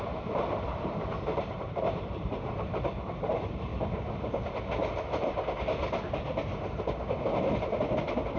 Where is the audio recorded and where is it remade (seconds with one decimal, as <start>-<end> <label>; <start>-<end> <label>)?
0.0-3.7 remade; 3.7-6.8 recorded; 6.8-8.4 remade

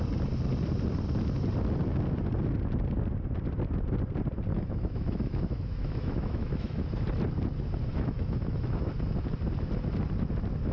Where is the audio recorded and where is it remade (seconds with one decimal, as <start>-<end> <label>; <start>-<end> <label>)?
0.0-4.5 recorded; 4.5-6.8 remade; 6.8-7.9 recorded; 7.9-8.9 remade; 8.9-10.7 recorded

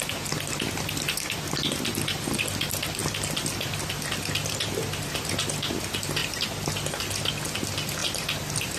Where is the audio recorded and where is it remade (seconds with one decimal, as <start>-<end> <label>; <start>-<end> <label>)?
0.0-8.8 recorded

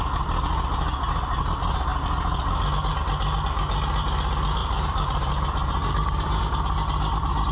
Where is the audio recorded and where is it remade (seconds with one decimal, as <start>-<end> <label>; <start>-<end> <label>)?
0.0-4.6 recorded; 4.6-5.3 remade; 5.3-5.8 recorded; 5.8-6.4 remade; 6.4-7.5 recorded

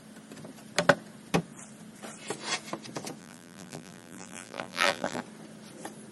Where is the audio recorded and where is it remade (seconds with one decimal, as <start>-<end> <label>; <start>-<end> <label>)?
0.0-3.2 recorded; 3.2-5.2 remade; 5.2-6.1 recorded

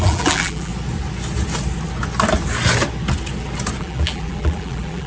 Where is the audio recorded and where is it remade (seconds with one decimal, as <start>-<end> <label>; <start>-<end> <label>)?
0.0-0.7 remade; 0.7-3.8 recorded; 3.8-5.1 remade

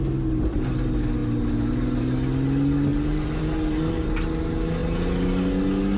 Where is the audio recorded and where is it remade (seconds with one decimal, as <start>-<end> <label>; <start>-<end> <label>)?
0.0-6.0 recorded